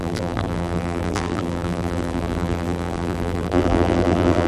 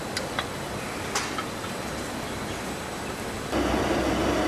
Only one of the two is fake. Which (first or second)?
first